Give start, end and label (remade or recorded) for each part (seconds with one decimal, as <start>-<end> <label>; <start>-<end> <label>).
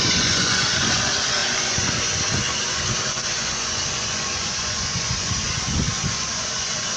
0.0-7.0 remade